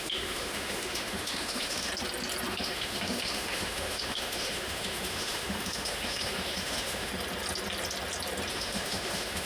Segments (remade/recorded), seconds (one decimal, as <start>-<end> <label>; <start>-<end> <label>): 0.0-1.9 remade; 1.9-2.5 recorded; 2.5-7.1 remade; 7.1-8.5 recorded; 8.5-9.5 remade